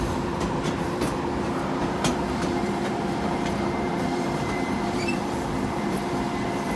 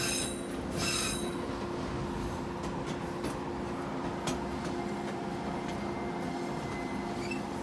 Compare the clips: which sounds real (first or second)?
second